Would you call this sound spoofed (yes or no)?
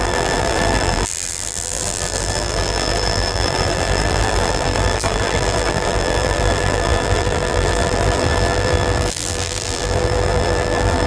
yes